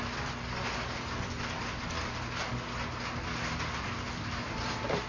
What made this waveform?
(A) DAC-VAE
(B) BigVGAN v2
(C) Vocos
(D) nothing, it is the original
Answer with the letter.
D